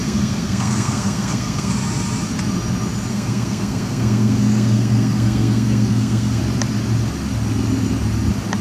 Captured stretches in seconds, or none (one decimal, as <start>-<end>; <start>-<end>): 1.7-3.1; 6.4-8.6